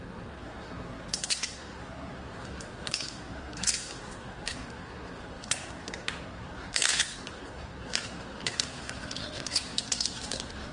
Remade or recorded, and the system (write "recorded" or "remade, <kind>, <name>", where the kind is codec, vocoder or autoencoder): remade, codec, SNAC